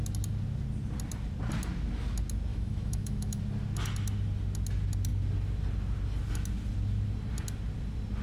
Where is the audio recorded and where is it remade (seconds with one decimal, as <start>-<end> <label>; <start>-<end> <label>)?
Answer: 0.0-2.5 recorded; 2.5-3.4 remade; 3.4-8.2 recorded